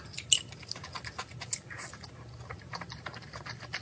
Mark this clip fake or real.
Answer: real